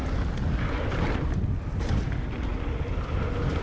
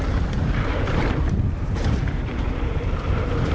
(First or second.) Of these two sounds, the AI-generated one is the second